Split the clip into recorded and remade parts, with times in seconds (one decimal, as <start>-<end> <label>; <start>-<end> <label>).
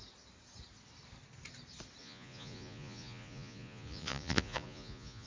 0.0-2.0 recorded; 2.0-5.3 remade